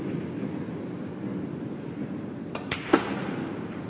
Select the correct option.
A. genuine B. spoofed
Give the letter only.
A